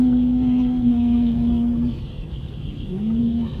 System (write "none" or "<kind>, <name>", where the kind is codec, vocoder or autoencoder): codec, SNAC